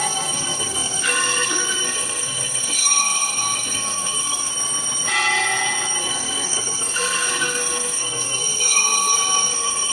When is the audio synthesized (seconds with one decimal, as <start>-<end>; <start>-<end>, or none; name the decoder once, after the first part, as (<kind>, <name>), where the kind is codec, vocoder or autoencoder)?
0.0-4.5 (codec, SNAC); 6.0-9.9